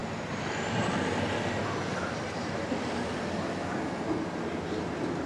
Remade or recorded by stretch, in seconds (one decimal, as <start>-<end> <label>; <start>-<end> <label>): 0.0-5.3 recorded